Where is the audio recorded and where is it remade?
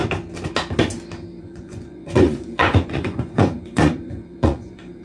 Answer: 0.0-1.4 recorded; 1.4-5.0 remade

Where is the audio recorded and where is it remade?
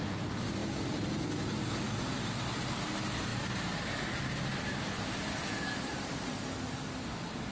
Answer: 0.0-7.5 recorded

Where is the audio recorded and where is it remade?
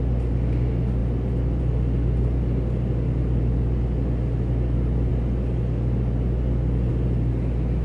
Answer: 0.0-7.8 recorded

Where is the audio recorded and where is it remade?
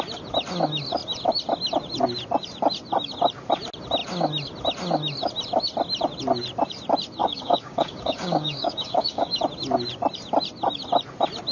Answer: 0.0-7.2 recorded; 7.2-9.4 remade; 9.4-11.5 recorded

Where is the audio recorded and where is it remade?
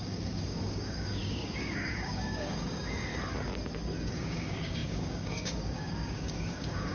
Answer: 0.0-3.1 remade; 3.1-4.1 recorded; 4.1-6.9 remade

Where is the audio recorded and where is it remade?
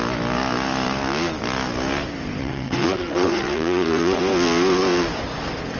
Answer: 0.0-2.4 recorded; 2.4-4.2 remade; 4.2-5.8 recorded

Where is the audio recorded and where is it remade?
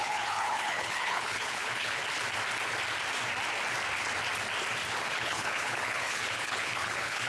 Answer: 0.0-2.0 remade; 2.0-5.0 recorded; 5.0-7.3 remade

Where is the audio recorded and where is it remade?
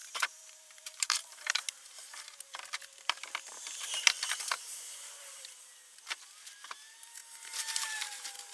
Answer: 0.0-7.2 remade; 7.2-7.8 recorded; 7.8-8.5 remade